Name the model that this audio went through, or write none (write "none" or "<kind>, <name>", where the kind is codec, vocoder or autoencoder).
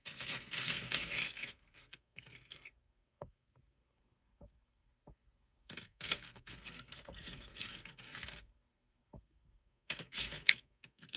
codec, SNAC